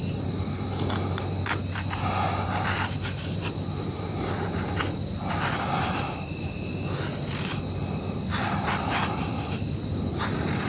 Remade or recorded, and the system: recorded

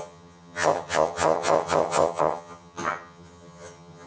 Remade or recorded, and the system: remade, vocoder, HiFi-GAN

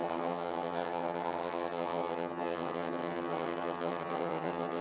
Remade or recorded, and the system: remade, vocoder, HiFi-GAN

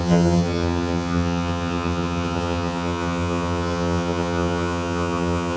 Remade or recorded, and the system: remade, vocoder, HiFi-GAN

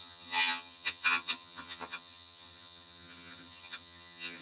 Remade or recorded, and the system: remade, vocoder, HiFi-GAN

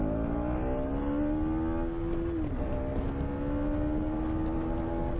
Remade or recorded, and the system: recorded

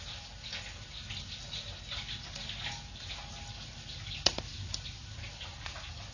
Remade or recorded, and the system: recorded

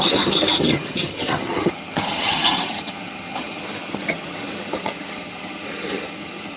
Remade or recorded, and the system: remade, vocoder, HiFi-GAN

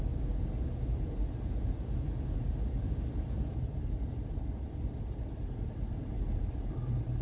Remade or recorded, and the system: recorded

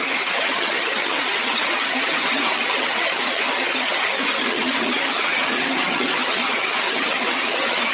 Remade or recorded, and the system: remade, vocoder, HiFi-GAN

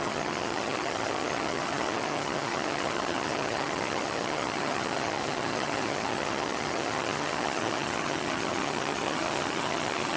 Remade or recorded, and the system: remade, vocoder, HiFi-GAN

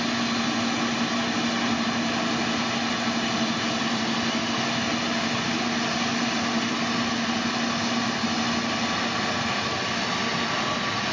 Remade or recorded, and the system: recorded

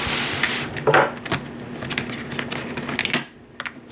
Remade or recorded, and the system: recorded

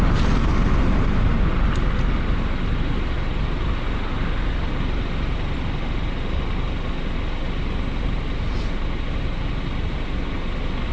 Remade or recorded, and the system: recorded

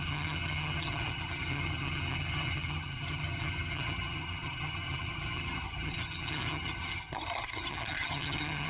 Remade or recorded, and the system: remade, vocoder, HiFi-GAN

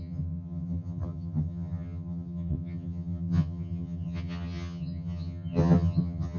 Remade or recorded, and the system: remade, vocoder, HiFi-GAN